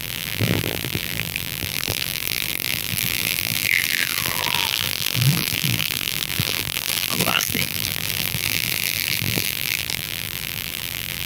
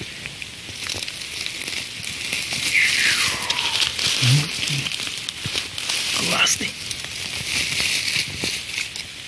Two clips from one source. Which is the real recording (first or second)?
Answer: second